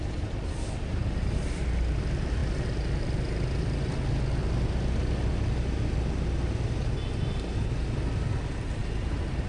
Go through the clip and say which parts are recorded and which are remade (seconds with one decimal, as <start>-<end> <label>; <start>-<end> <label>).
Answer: 0.0-9.5 recorded